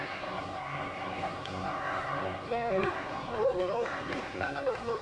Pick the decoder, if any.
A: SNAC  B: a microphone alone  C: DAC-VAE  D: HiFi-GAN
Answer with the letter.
A